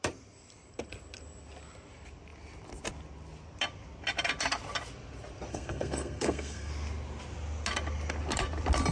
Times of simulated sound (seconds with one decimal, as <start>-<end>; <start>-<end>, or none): 5.5-6.7